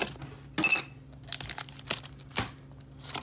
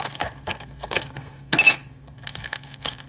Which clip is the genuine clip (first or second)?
first